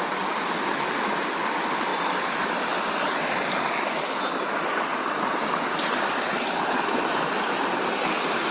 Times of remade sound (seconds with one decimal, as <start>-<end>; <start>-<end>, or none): 4.9-7.9